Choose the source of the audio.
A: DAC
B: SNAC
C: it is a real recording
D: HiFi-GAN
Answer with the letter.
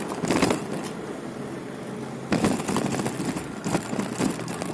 C